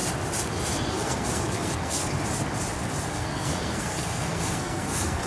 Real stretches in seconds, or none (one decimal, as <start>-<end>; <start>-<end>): 0.0-0.9; 2.0-3.1